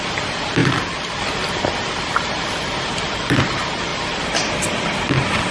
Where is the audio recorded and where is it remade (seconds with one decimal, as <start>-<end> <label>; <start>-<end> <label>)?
0.0-3.9 remade; 3.9-5.5 recorded

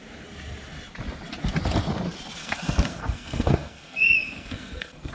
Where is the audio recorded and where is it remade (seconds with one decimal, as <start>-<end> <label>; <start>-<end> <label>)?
0.0-2.4 recorded; 2.4-5.1 remade

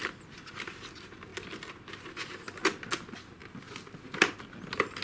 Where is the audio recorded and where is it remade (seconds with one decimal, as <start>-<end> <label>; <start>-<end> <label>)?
0.0-5.0 recorded

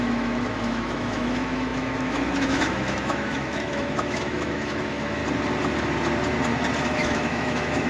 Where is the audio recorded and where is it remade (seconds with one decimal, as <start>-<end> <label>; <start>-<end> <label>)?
0.0-5.2 remade; 5.2-6.8 recorded; 6.8-7.9 remade

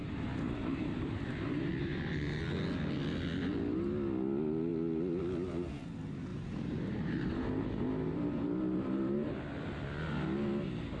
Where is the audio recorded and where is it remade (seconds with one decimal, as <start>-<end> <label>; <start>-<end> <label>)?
0.0-2.4 remade; 2.4-6.3 recorded; 6.3-9.3 remade; 9.3-11.0 recorded